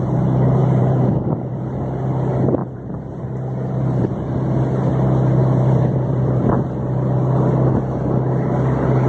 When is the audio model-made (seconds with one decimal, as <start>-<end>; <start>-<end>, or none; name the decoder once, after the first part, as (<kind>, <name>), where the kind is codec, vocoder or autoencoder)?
0.6-1.6 (vocoder, BigVGAN v2); 2.6-4.1; 5.4-6.5